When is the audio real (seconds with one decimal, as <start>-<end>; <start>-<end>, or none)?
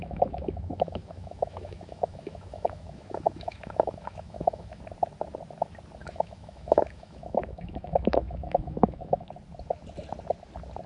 4.8-6.0; 9.3-10.9